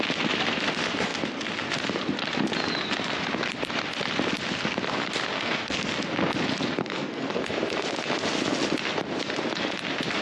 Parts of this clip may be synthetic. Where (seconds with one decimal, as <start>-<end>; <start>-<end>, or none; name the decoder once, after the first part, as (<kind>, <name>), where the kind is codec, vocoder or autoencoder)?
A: 5.3-5.9 (codec, SNAC); 6.8-7.3